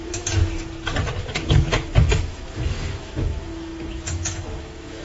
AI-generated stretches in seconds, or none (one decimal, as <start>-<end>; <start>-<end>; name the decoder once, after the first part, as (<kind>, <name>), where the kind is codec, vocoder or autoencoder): 0.0-0.4 (autoencoder, DAC-VAE); 1.2-5.0